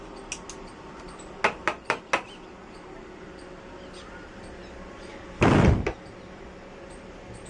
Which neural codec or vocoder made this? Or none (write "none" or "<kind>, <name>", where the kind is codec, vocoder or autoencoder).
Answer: none